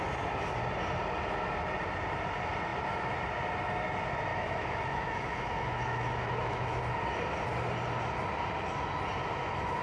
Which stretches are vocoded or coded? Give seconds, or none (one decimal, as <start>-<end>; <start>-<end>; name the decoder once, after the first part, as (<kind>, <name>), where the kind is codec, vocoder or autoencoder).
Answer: 4.3-6.8 (autoencoder, DAC-VAE)